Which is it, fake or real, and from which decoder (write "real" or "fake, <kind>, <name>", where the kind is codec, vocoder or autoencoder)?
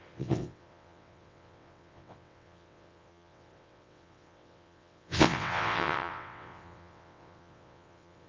fake, vocoder, WaveNeXt